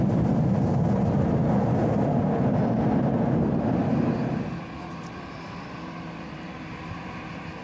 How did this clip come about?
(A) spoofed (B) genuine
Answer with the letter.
B